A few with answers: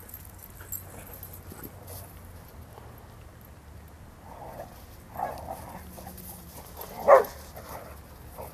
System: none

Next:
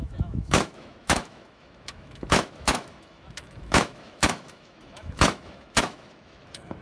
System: autoencoder, DAC-VAE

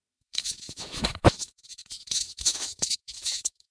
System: autoencoder, DAC-VAE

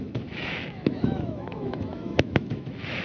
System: autoencoder, DAC-VAE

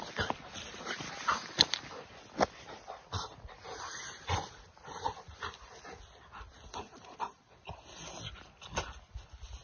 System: none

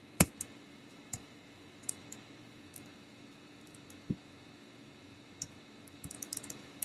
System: autoencoder, DAC-VAE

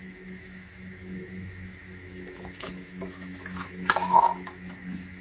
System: autoencoder, DAC-VAE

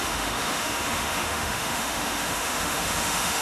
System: autoencoder, DAC-VAE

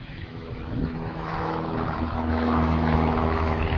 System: autoencoder, DAC-VAE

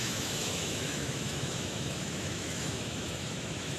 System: autoencoder, DAC-VAE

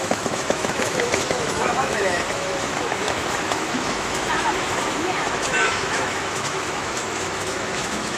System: autoencoder, DAC-VAE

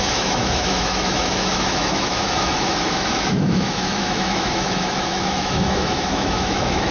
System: autoencoder, DAC-VAE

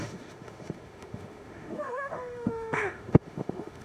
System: autoencoder, DAC-VAE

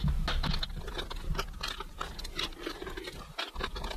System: none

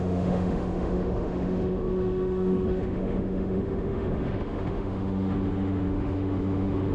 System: autoencoder, DAC-VAE